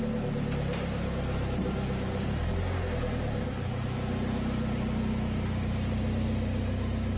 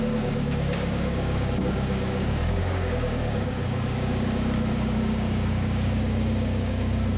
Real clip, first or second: first